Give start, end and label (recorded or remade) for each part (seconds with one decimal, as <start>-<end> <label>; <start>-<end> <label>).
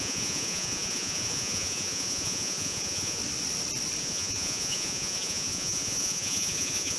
0.0-3.2 remade; 3.2-4.0 recorded; 4.0-7.0 remade